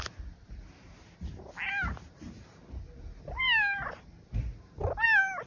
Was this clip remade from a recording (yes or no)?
no